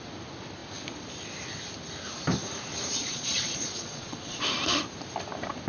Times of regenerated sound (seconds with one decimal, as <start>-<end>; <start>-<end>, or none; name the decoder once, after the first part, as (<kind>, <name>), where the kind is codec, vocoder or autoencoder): 3.0-4.4 (vocoder, Vocos)